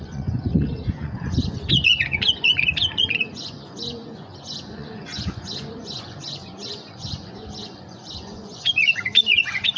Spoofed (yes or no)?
yes